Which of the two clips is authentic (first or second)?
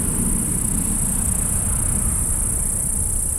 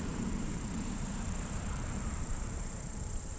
first